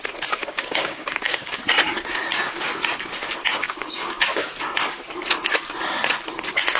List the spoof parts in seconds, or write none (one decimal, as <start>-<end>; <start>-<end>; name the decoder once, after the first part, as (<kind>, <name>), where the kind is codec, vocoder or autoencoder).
0.4-1.6 (codec, DAC); 3.5-4.5